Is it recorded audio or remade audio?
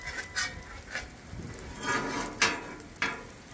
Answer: recorded